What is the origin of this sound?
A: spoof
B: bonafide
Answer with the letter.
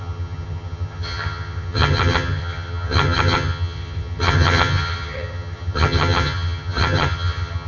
A